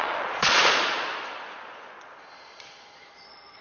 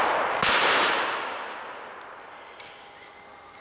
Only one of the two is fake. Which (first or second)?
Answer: first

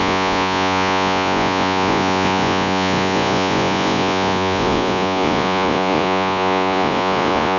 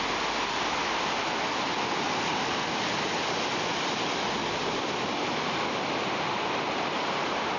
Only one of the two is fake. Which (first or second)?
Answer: first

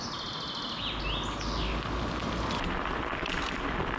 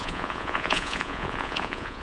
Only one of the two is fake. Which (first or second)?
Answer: second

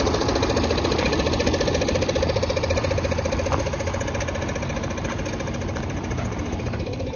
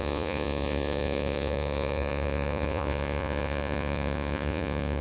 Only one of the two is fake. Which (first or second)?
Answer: second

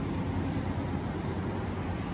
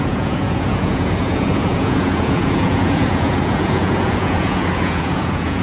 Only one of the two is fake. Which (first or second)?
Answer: second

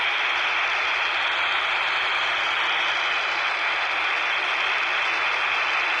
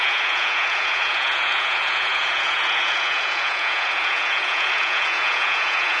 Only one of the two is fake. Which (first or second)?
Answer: second